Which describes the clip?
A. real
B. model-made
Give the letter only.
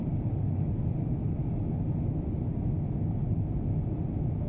A